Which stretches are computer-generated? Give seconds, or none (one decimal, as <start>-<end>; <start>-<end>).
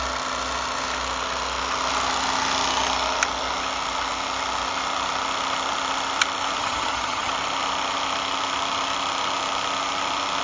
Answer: 6.6-7.3